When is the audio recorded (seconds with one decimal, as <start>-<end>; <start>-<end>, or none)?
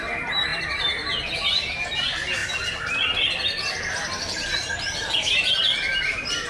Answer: 0.0-6.5